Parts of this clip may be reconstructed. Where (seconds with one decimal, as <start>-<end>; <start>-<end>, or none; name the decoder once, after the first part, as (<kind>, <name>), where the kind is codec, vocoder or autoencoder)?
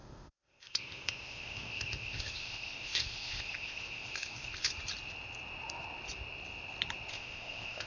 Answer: 0.0-4.7 (codec, ZipCodec); 7.1-7.9